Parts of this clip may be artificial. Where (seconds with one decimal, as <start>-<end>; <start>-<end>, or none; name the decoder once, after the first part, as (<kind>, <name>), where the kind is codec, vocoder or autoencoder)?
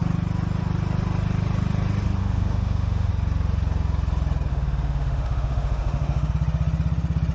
2.2-3.1 (autoencoder, DAC-VAE); 4.5-6.3